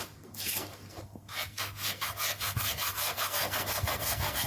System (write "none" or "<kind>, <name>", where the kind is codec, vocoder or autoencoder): codec, SNAC